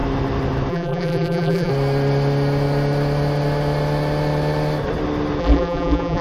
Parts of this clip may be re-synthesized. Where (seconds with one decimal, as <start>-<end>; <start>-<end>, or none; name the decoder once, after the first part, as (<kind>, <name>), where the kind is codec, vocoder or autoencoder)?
0.7-1.7 (vocoder, BigVGAN v2); 5.4-6.2